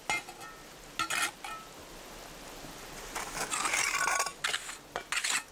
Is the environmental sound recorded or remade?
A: recorded